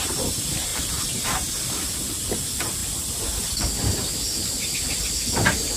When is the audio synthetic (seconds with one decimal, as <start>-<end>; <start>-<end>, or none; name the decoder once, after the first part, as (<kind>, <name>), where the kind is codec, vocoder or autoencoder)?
0.7-1.5 (vocoder, BigVGAN v2)